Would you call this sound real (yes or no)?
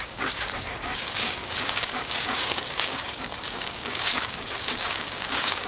no